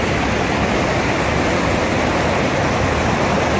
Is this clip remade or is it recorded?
recorded